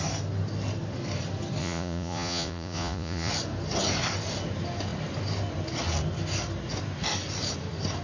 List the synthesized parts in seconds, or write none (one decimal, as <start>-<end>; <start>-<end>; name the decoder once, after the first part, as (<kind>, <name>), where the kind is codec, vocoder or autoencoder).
1.6-3.3 (vocoder, Vocos)